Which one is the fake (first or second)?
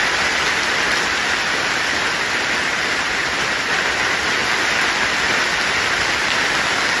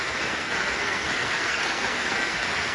second